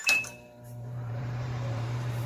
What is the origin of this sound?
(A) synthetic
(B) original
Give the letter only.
A